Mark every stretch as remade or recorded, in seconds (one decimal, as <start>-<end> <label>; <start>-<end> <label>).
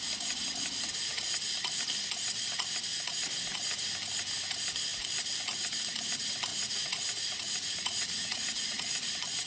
0.0-6.5 recorded; 6.5-9.1 remade; 9.1-9.5 recorded